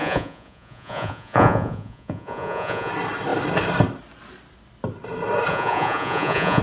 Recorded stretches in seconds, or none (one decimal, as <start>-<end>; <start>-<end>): 2.9-5.5